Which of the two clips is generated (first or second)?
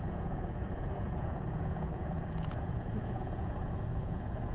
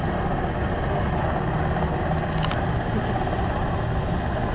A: first